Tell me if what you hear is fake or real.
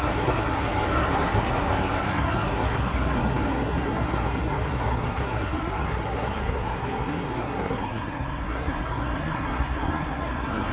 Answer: fake